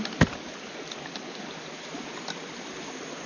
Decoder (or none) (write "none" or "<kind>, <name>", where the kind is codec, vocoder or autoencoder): none